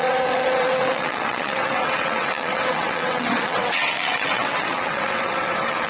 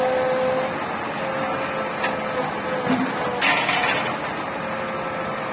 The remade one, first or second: first